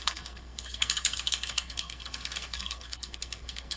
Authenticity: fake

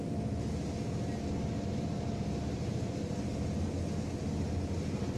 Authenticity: real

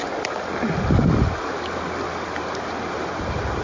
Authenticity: real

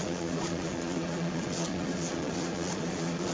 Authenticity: fake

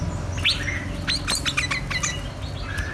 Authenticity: real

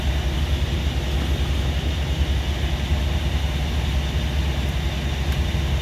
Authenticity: real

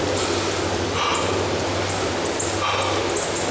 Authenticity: real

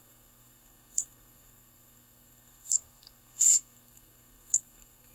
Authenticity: fake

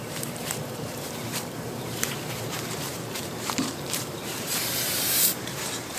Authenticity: fake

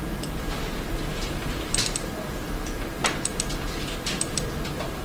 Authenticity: fake